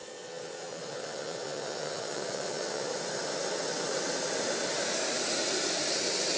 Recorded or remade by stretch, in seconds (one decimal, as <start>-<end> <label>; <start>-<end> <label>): 0.0-2.9 remade; 2.9-6.4 recorded